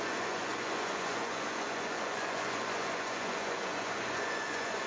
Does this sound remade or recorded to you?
remade